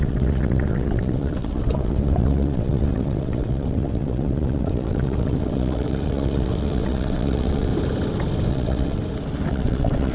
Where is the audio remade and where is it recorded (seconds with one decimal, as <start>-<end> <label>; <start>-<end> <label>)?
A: 0.0-7.7 remade; 7.7-8.5 recorded; 8.5-9.0 remade; 9.0-9.5 recorded; 9.5-10.1 remade